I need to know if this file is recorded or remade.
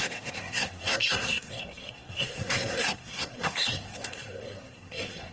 remade